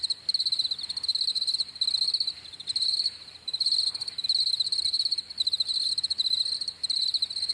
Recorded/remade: recorded